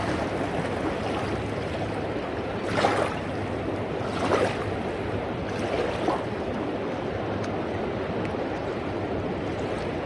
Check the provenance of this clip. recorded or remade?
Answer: recorded